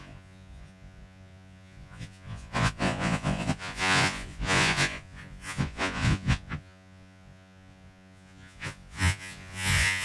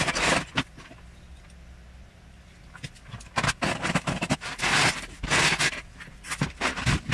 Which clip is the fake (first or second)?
first